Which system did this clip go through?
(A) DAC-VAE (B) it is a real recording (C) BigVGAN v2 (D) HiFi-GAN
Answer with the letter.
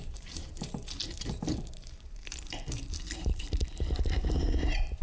C